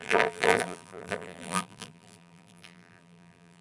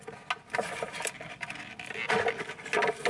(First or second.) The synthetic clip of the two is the first